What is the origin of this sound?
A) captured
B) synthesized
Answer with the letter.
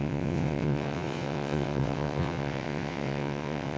B